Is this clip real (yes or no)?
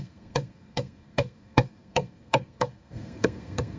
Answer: no